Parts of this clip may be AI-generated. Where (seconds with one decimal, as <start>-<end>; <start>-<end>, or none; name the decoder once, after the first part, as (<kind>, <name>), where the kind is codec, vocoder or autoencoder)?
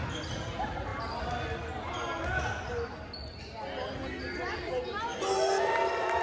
none